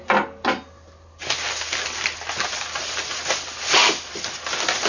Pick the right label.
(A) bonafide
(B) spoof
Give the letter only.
A